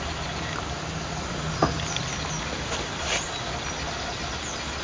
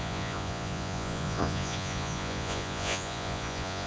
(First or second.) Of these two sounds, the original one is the first